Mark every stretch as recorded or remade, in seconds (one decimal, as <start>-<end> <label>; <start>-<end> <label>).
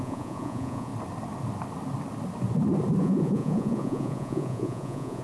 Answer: 0.0-0.9 remade; 0.9-3.0 recorded; 3.0-5.2 remade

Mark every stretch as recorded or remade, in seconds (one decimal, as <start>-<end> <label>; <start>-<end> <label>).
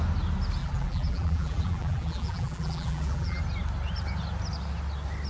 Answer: 0.0-0.6 recorded; 0.6-3.4 remade; 3.4-5.3 recorded